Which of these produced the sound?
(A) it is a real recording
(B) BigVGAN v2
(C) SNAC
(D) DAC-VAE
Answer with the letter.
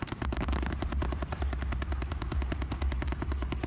A